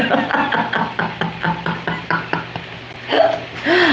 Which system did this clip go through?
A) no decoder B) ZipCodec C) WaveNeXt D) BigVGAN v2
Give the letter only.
A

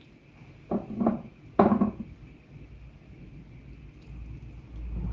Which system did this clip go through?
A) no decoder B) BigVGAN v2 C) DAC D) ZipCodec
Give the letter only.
A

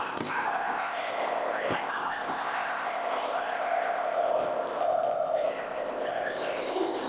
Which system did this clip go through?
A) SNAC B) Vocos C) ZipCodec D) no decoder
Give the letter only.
C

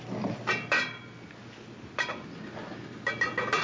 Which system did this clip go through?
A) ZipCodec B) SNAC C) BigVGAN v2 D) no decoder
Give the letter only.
D